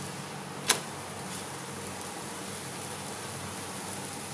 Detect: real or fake real